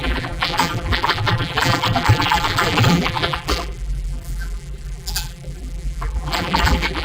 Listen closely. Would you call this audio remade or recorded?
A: remade